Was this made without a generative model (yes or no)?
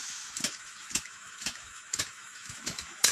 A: no